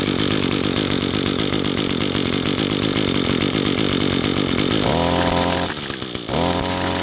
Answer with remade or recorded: recorded